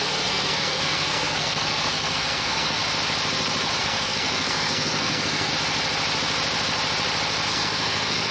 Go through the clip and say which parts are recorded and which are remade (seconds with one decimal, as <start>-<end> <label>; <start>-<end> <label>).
0.0-2.8 remade; 2.8-3.8 recorded; 3.8-5.5 remade; 5.5-7.5 recorded; 7.5-8.3 remade